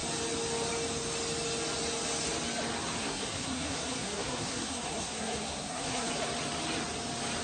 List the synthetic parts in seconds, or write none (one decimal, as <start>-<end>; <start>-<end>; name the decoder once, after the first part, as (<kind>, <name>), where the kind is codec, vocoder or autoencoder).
3.0-6.1 (codec, SNAC)